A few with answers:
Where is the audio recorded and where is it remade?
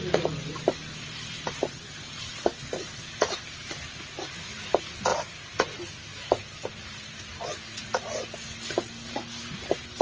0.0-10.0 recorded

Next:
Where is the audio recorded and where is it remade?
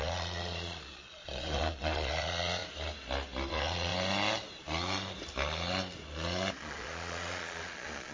0.0-2.6 remade; 2.6-3.5 recorded; 3.5-3.9 remade; 3.9-6.6 recorded; 6.6-8.1 remade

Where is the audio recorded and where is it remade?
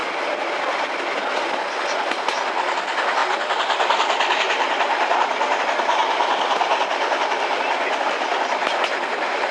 0.0-9.5 recorded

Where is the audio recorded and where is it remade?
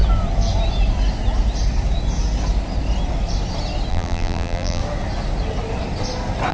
0.0-3.9 recorded; 3.9-4.8 remade; 4.8-6.5 recorded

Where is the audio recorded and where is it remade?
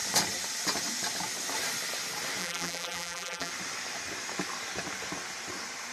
0.0-2.4 recorded; 2.4-3.5 remade; 3.5-5.9 recorded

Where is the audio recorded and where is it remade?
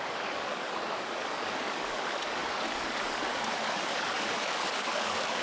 0.0-5.4 remade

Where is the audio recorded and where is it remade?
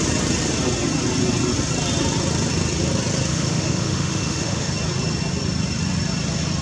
0.0-3.3 recorded; 3.3-4.7 remade; 4.7-6.6 recorded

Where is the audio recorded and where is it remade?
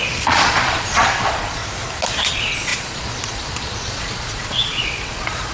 0.0-1.6 remade; 1.6-2.3 recorded; 2.3-5.5 remade